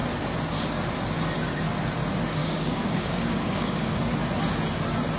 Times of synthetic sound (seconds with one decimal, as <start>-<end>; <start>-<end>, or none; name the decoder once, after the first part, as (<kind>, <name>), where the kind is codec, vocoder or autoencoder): 2.4-3.9 (codec, DAC)